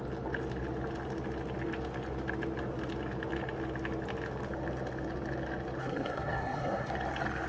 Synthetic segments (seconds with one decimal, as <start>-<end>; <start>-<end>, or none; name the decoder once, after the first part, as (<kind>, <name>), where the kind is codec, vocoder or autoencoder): 5.8-6.9 (codec, SNAC)